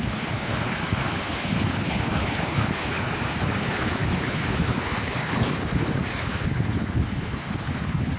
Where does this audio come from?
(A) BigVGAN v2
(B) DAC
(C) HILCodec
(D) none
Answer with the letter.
C